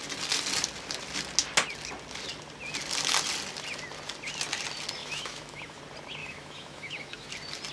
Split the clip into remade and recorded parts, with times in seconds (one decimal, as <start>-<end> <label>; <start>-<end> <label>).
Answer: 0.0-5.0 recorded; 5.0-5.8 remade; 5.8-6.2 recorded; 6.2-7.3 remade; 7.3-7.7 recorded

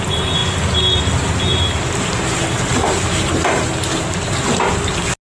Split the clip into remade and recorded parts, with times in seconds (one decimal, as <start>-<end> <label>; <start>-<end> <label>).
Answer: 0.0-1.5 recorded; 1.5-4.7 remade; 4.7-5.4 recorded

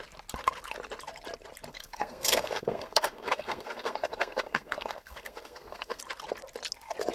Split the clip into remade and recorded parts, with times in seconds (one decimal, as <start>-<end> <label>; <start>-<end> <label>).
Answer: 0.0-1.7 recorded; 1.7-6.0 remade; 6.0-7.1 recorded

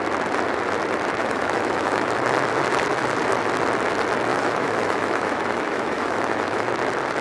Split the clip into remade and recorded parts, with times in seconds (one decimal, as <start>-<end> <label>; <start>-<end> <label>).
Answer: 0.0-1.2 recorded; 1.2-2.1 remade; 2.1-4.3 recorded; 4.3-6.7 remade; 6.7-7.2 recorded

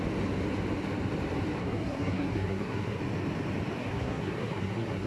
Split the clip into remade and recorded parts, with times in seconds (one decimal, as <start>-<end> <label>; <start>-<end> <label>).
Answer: 0.0-1.6 recorded; 1.6-3.0 remade; 3.0-3.8 recorded; 3.8-5.1 remade

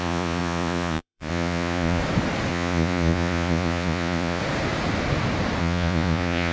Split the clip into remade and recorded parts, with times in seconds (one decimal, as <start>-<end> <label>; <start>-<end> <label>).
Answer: 0.0-2.0 remade; 2.0-2.5 recorded; 2.5-4.4 remade; 4.4-5.6 recorded; 5.6-6.5 remade

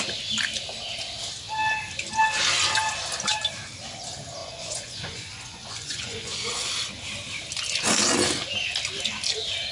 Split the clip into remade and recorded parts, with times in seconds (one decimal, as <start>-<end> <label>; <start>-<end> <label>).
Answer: 0.0-4.4 recorded; 4.4-6.7 remade; 6.7-9.7 recorded